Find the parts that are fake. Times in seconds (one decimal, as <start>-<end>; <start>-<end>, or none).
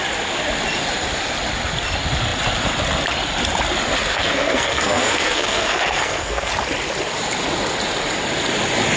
4.0-6.5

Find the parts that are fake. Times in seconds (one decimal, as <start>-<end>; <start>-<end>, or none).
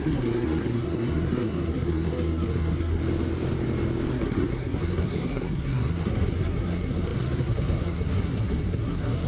0.0-3.0; 4.1-9.3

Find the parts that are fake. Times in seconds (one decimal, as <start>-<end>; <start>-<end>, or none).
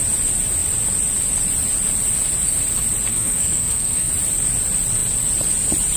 3.1-4.1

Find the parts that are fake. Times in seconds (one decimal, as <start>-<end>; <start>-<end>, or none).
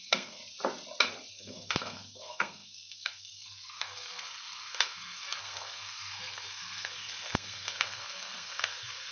0.0-0.4; 1.3-9.1